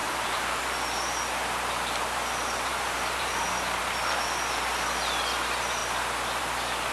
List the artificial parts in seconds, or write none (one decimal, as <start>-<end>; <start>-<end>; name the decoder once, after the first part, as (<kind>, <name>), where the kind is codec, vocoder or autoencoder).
0.0-0.6 (vocoder, BigVGAN v2); 2.7-3.8